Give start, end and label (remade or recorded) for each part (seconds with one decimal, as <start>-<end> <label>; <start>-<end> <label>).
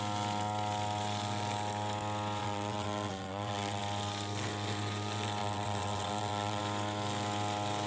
0.0-2.4 recorded; 2.4-3.8 remade; 3.8-5.4 recorded; 5.4-6.6 remade; 6.6-7.9 recorded